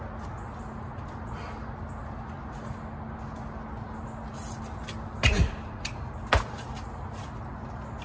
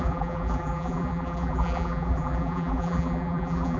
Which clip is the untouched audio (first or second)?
first